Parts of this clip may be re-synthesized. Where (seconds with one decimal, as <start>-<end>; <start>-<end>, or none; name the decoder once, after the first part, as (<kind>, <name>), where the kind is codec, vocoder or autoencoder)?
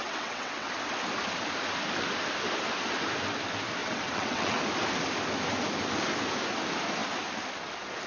0.0-0.7 (vocoder, WaveNeXt); 3.8-4.6